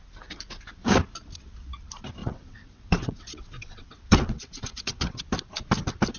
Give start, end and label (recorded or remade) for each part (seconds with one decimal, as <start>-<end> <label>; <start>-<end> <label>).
0.0-2.2 recorded; 2.2-5.2 remade; 5.2-6.2 recorded